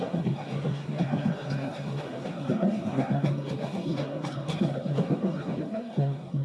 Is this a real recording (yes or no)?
no